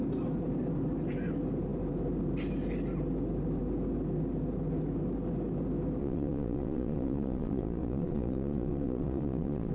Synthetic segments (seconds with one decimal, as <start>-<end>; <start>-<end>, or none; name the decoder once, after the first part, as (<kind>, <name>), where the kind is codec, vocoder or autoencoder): 6.0-9.7 (vocoder, Vocos)